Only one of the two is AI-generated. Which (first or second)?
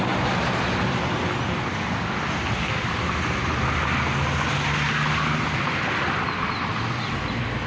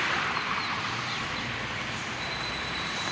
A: second